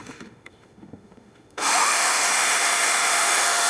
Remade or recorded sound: remade